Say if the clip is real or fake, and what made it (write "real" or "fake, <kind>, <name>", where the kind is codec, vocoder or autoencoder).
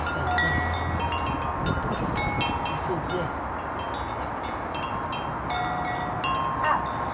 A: real